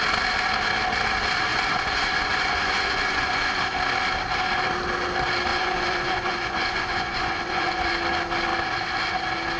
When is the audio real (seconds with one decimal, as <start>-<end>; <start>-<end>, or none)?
0.0-1.5; 3.6-5.5; 7.9-9.6